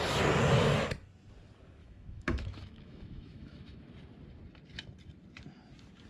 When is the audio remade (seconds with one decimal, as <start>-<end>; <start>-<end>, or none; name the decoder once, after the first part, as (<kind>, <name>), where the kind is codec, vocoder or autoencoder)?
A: 1.8-3.8 (autoencoder, DAC-VAE)